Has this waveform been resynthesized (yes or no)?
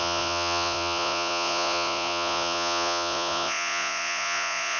yes